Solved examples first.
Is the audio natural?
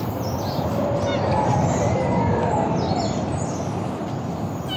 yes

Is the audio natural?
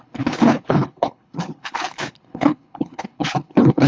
no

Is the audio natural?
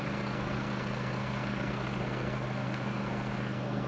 no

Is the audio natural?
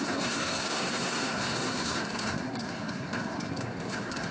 no